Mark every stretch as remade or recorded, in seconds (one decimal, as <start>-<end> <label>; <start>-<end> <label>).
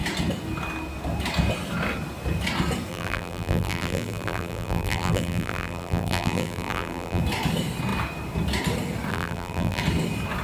0.0-2.9 recorded; 2.9-7.2 remade; 7.2-9.1 recorded; 9.1-9.8 remade; 9.8-10.4 recorded